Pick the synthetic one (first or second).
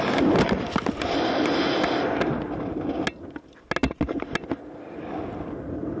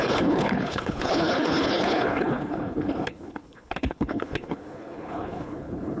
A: second